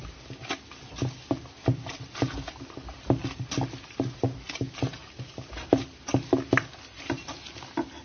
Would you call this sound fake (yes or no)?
no